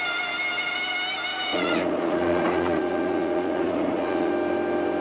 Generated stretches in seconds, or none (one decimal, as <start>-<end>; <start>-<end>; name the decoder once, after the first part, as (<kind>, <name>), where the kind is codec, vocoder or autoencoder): 1.3-4.3 (vocoder, Vocos)